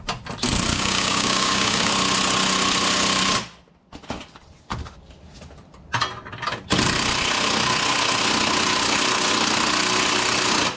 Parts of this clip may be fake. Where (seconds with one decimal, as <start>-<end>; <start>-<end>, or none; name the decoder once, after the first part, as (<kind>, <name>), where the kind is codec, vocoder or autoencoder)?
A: 0.7-1.9 (codec, DAC)